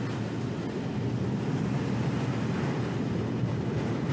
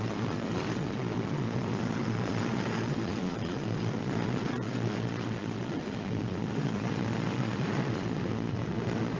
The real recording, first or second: first